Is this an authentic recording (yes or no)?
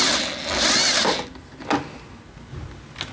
yes